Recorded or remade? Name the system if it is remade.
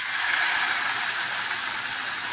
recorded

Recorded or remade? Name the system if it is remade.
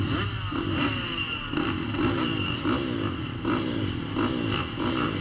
recorded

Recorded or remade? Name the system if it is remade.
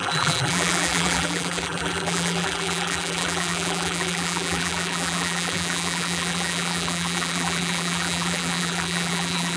remade, vocoder, BigVGAN v2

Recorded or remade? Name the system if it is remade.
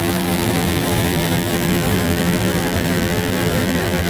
remade, vocoder, BigVGAN v2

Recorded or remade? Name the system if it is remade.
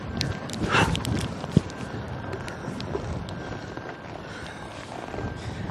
remade, vocoder, BigVGAN v2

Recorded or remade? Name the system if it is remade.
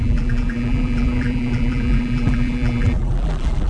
remade, vocoder, BigVGAN v2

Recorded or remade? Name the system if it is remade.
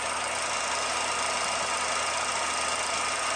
recorded